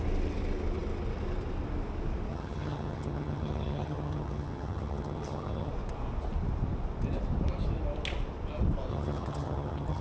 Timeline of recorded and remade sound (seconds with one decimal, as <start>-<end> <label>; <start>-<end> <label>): 0.0-2.3 recorded; 2.3-5.7 remade; 5.7-8.9 recorded; 8.9-10.0 remade